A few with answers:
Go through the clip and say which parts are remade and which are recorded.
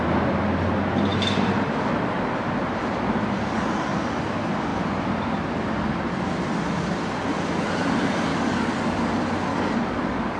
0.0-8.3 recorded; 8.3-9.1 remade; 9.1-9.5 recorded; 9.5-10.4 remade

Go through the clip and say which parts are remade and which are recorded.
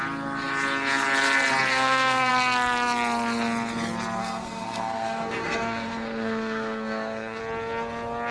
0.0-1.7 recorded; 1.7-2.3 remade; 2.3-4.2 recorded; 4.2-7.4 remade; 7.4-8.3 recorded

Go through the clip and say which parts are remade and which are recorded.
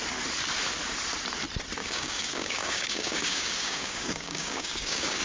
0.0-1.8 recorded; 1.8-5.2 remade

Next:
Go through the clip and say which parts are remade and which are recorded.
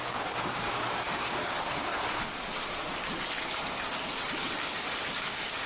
0.0-1.9 remade; 1.9-5.3 recorded; 5.3-5.7 remade